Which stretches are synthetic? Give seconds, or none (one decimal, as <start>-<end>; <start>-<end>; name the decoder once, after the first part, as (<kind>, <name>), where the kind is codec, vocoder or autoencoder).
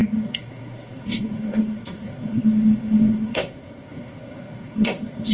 0.0-5.3 (codec, SNAC)